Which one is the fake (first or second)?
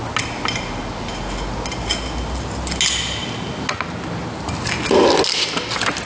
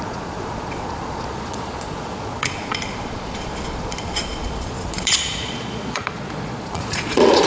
second